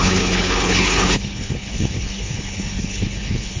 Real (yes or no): no